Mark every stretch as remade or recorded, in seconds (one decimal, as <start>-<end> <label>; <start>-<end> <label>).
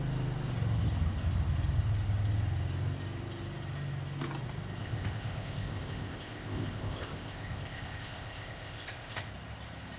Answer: 0.0-4.8 recorded; 4.8-9.3 remade; 9.3-10.0 recorded